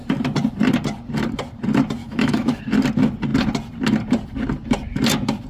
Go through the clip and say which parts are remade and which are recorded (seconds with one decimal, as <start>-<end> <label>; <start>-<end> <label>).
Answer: 0.0-2.0 recorded; 2.0-2.6 remade; 2.6-5.5 recorded